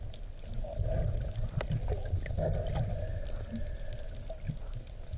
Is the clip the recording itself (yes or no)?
yes